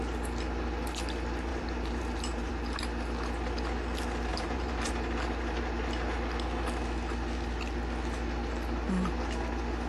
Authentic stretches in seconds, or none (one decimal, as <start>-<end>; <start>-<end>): 0.0-1.5; 2.5-4.3; 4.9-9.9